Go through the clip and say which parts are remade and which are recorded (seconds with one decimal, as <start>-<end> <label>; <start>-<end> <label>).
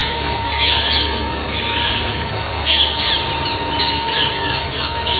0.0-3.1 remade; 3.1-3.8 recorded; 3.8-5.2 remade